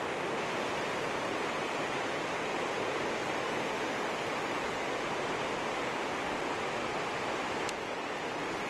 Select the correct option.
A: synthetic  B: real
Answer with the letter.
B